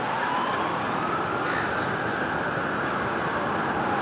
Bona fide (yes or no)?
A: yes